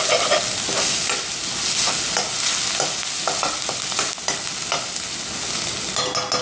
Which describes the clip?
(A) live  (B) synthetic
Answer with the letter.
A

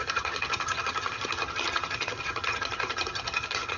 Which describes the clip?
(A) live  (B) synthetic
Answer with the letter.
B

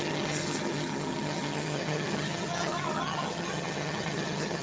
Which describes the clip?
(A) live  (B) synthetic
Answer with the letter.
B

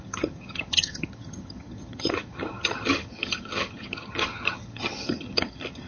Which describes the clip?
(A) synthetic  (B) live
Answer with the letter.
A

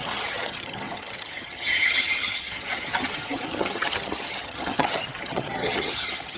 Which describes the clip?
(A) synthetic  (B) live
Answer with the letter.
A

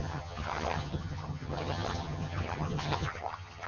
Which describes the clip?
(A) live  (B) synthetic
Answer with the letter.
B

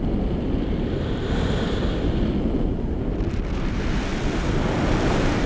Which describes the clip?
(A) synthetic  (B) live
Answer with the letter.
B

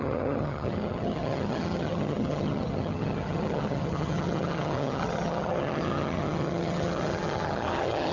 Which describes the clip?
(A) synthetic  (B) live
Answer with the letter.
A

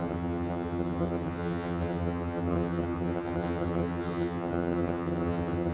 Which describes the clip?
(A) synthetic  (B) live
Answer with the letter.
A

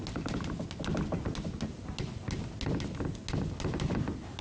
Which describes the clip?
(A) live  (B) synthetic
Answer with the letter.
A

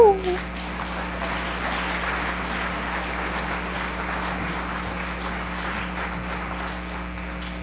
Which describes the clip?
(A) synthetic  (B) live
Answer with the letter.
B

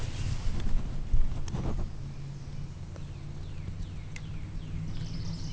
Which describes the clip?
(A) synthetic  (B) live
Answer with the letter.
B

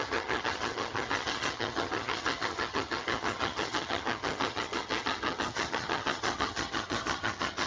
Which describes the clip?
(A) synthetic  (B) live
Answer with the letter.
A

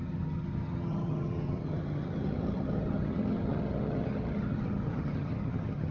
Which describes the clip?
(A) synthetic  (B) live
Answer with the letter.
A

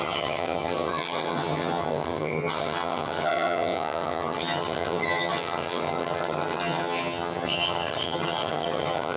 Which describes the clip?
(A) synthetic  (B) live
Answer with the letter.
A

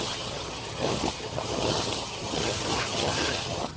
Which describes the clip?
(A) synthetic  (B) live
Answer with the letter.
A